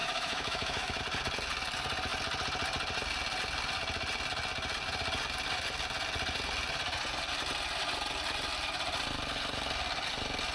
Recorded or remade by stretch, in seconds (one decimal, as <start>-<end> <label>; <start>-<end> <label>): 0.0-1.0 remade; 1.0-10.5 recorded